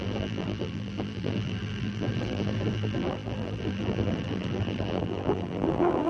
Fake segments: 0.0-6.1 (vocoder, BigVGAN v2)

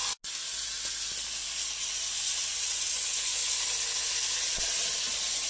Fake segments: 1.8-3.5 (vocoder, Vocos)

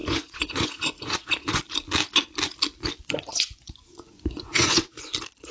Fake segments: 0.0-1.6 (vocoder, Vocos); 3.3-5.1

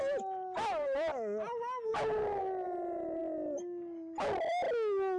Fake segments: none

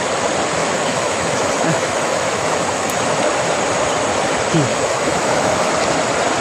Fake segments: 0.6-3.0 (autoencoder, DAC-VAE); 4.7-5.7

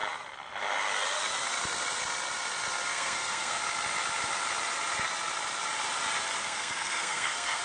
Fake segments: 2.9-3.6 (codec, SNAC); 6.4-7.6